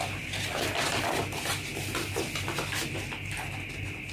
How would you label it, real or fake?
fake